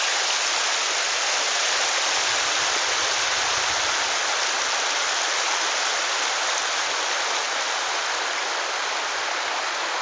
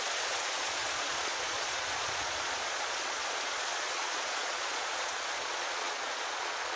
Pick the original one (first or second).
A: first